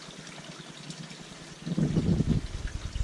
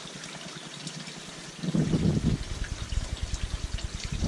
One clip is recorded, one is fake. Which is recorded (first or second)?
first